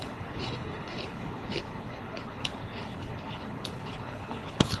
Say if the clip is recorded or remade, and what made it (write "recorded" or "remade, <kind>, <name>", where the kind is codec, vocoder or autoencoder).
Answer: remade, codec, HILCodec